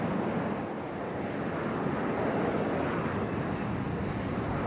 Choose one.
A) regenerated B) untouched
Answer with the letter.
B